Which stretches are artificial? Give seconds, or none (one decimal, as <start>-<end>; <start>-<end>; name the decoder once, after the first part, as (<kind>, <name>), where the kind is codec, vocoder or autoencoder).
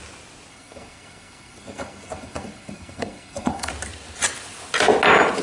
0.5-3.7 (codec, SNAC)